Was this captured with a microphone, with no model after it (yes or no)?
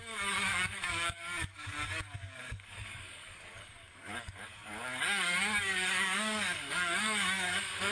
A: no